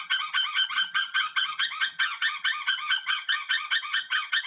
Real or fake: fake